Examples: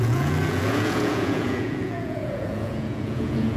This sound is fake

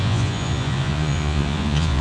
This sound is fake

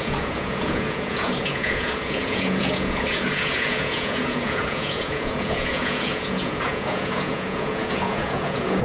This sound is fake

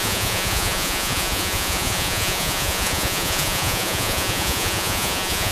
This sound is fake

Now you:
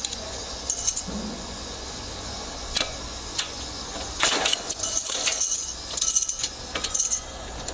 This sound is fake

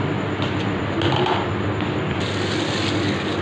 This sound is real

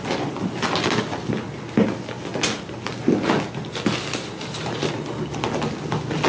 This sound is real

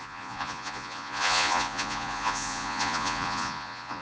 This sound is fake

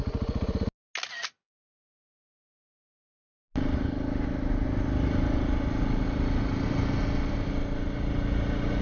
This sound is real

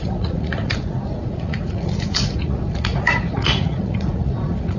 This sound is fake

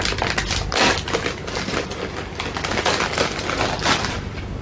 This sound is real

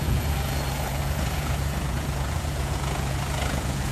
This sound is fake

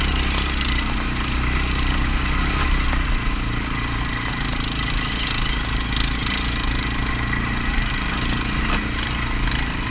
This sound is real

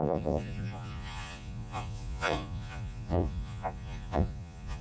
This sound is fake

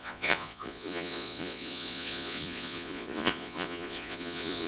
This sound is fake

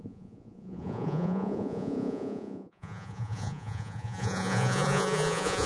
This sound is fake